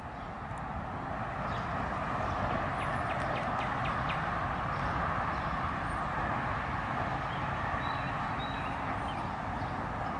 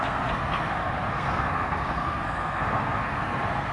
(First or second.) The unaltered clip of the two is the first